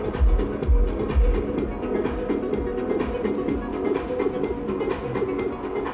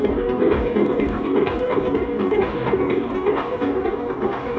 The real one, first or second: first